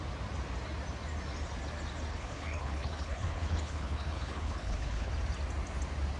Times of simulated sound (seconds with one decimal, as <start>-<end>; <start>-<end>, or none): 2.1-5.1